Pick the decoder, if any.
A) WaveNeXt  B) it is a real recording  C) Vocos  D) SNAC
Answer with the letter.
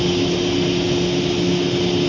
B